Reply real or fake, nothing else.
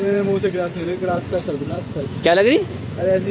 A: fake